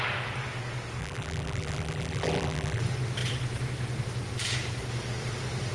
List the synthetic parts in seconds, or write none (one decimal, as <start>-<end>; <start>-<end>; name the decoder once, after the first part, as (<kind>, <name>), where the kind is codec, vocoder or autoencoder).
1.0-2.8 (vocoder, BigVGAN v2)